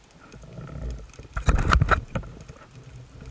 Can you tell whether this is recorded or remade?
recorded